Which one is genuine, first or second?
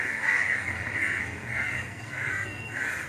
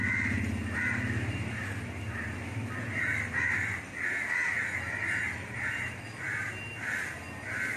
second